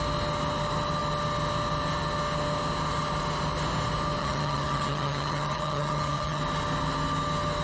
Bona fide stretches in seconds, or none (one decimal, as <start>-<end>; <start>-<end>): 0.0-4.2; 6.4-7.6